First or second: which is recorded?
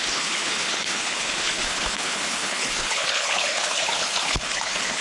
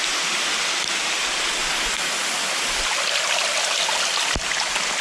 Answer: second